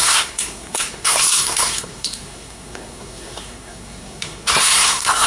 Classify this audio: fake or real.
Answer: fake